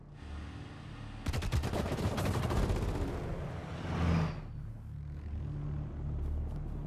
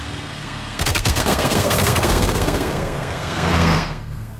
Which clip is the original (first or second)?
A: first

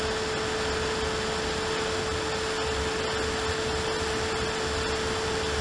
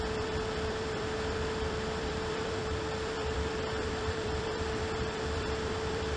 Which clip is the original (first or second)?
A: first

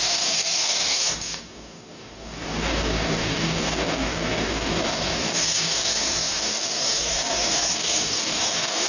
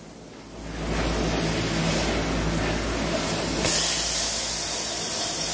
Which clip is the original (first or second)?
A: second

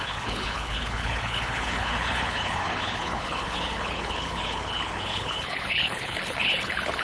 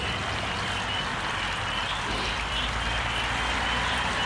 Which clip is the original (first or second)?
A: second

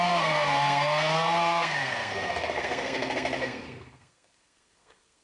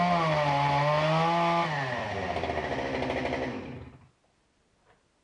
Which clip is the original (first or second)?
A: second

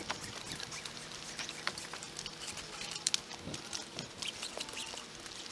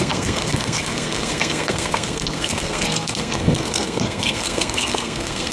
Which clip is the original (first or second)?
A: first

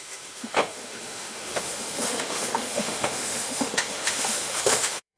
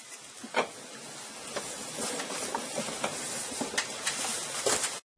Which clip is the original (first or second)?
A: second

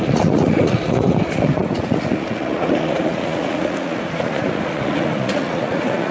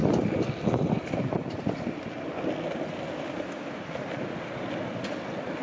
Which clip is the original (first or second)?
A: second